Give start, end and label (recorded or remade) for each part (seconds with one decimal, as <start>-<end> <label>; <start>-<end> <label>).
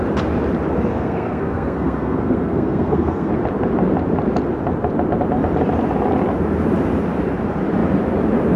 0.0-0.9 recorded; 0.9-3.3 remade; 3.3-8.6 recorded